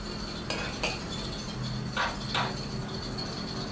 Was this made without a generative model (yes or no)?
yes